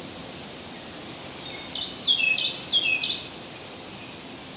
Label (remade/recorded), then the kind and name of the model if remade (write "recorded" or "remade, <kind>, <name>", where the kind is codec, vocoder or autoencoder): recorded